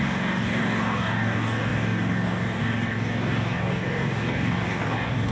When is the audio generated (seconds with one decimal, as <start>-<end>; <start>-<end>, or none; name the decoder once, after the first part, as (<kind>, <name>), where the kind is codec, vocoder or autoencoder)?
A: 0.0-5.3 (codec, DAC)